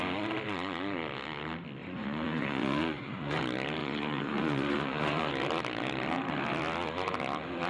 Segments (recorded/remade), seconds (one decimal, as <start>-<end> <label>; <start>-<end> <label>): 0.0-1.8 recorded; 1.8-3.4 remade; 3.4-3.8 recorded; 3.8-5.3 remade; 5.3-7.7 recorded